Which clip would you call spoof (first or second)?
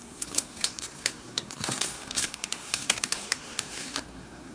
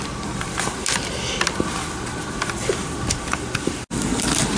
first